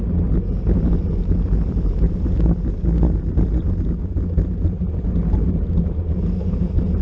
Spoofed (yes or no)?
no